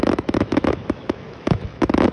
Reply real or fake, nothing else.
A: fake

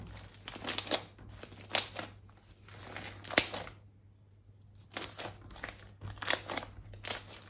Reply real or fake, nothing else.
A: real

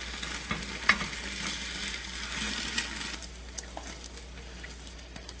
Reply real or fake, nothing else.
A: real